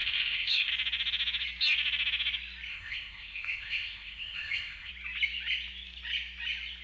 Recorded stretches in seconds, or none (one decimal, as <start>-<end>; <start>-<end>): 0.7-2.7; 4.9-6.8